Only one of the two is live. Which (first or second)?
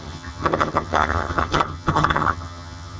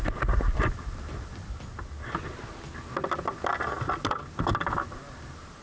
second